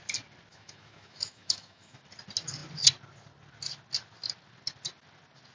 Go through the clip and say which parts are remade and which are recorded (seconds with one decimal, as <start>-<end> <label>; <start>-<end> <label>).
0.0-0.5 recorded; 0.5-2.0 remade; 2.0-5.5 recorded